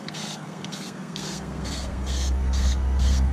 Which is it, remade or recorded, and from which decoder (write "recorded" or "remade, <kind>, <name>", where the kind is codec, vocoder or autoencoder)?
remade, codec, SNAC